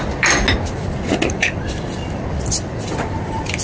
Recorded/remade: recorded